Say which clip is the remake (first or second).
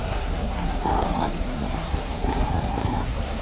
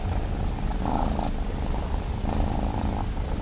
first